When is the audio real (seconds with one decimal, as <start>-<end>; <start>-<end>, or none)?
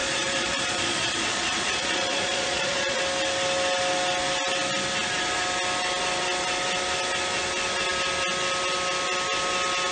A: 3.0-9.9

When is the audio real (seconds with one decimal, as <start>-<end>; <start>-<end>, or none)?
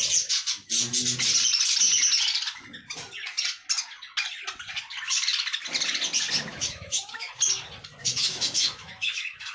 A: 0.0-6.5; 7.3-8.0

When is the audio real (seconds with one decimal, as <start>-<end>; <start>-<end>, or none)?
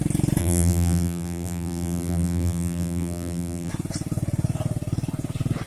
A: 0.0-0.4; 3.7-5.7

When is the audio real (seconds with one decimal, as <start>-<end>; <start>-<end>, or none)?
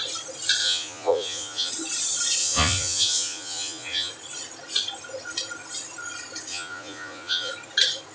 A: 0.0-0.6; 1.7-2.4; 4.1-6.5; 7.5-8.1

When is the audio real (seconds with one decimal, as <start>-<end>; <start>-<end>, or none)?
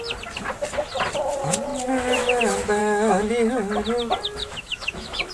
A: 0.0-2.8; 3.3-4.4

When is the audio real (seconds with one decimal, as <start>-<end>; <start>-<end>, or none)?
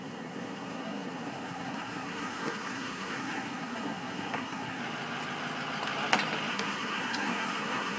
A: 4.8-6.5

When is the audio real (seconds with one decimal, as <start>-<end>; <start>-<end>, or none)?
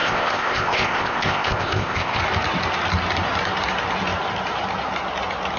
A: 2.2-5.6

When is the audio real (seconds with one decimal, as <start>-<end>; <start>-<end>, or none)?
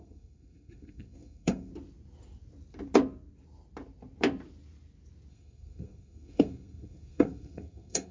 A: 1.7-5.3